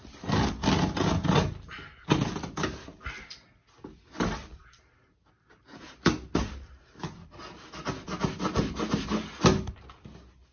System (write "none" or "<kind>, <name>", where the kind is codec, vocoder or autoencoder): none